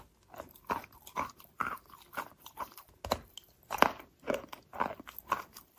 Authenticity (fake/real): real